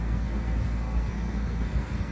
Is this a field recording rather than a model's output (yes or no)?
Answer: no